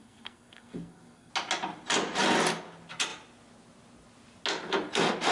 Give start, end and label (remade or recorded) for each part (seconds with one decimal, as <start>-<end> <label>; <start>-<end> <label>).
0.0-1.3 remade; 1.3-5.3 recorded

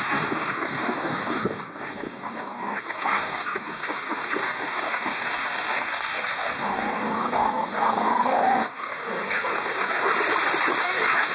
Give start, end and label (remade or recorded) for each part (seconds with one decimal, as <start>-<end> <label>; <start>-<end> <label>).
0.0-10.1 remade; 10.1-10.8 recorded; 10.8-11.3 remade

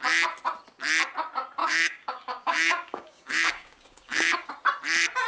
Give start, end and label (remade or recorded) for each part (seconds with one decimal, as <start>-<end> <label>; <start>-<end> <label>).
0.0-1.6 recorded; 1.6-4.5 remade; 4.5-5.3 recorded

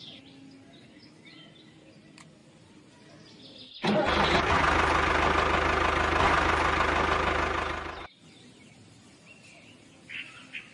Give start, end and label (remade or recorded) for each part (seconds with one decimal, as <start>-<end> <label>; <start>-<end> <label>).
0.0-10.7 recorded

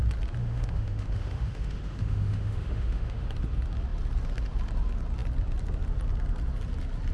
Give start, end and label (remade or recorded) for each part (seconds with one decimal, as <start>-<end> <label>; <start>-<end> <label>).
0.0-0.4 recorded; 0.4-3.3 remade; 3.3-7.1 recorded

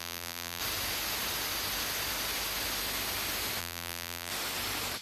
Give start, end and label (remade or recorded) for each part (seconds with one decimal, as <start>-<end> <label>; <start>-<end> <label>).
0.0-0.6 remade; 0.6-3.6 recorded; 3.6-4.3 remade; 4.3-5.0 recorded